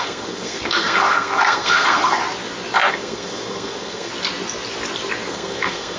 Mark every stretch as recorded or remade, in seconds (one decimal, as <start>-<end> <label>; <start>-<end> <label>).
0.0-2.2 remade; 2.2-2.9 recorded; 2.9-4.1 remade; 4.1-5.3 recorded; 5.3-6.0 remade